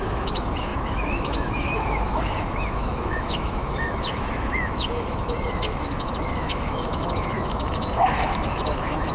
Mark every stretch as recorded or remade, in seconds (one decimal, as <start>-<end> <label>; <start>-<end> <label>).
0.0-9.1 remade